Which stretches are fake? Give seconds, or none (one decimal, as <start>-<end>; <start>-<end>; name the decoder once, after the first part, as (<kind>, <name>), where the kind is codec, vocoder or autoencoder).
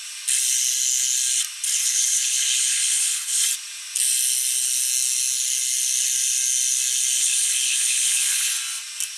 1.7-3.4 (codec, HILCodec); 7.2-8.5